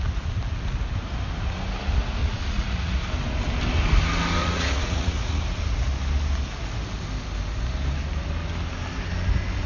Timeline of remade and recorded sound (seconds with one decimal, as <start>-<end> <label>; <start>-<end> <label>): 0.0-2.2 recorded; 2.2-3.0 remade; 3.0-4.4 recorded; 4.4-5.4 remade; 5.4-9.7 recorded